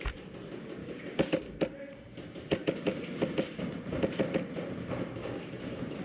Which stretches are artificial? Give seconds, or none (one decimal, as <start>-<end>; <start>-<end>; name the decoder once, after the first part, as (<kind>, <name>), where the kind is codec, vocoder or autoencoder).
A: 0.8-1.4 (codec, DAC); 5.2-6.0